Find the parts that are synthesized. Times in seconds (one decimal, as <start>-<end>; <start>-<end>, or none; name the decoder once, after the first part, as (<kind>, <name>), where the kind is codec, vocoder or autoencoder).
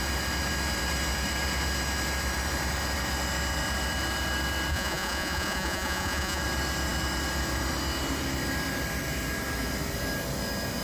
4.7-6.4 (vocoder, Vocos)